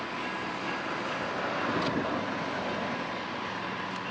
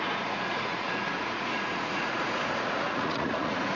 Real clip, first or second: first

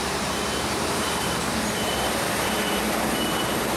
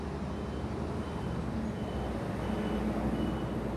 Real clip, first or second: second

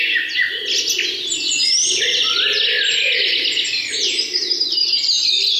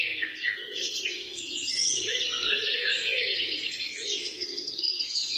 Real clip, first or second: first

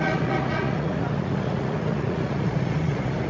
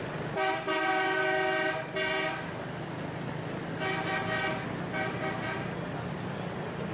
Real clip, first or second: second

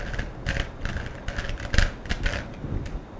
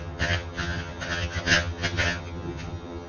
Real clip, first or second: first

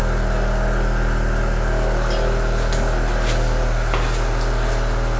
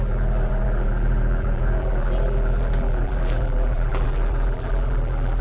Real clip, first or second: first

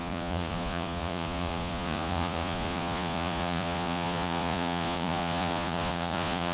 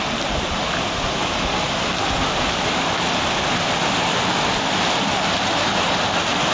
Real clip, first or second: second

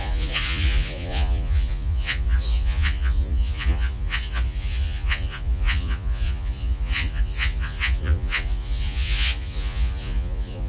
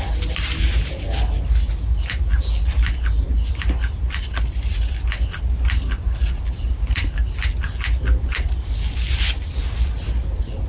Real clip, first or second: second